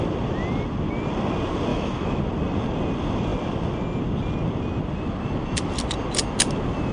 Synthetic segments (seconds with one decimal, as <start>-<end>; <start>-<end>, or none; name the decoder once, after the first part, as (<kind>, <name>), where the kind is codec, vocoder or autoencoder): 1.7-2.2 (autoencoder, DAC-VAE)